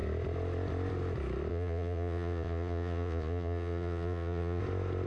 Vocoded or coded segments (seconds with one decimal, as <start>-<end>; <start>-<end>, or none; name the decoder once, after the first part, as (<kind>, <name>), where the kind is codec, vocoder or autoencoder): 1.5-4.6 (vocoder, Vocos)